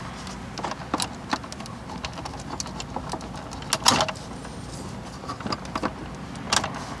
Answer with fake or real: real